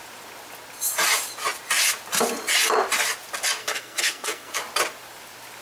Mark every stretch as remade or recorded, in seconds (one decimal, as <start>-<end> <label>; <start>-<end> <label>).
0.0-3.6 recorded; 3.6-4.6 remade; 4.6-5.6 recorded